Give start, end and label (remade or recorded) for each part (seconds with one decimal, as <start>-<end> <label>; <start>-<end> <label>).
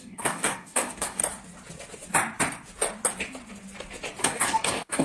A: 0.0-1.2 remade; 1.2-4.2 recorded; 4.2-5.0 remade